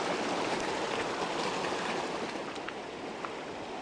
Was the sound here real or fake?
real